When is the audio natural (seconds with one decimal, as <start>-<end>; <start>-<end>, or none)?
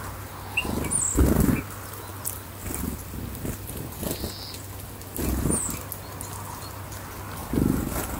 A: 0.0-2.1; 4.0-8.2